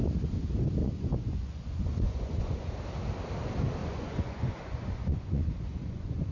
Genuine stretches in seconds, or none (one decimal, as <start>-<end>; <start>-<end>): 0.0-0.8; 2.7-3.8